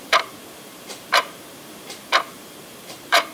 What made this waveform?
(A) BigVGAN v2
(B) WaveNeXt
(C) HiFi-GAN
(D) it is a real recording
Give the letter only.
A